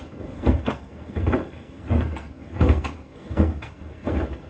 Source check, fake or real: fake